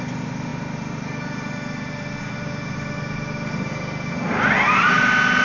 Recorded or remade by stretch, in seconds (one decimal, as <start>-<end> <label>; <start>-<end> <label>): 0.0-5.4 recorded